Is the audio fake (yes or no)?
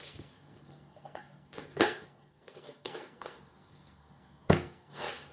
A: yes